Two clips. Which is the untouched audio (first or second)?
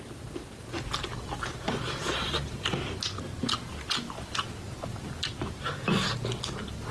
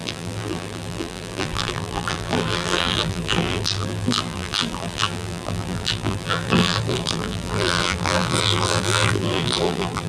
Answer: first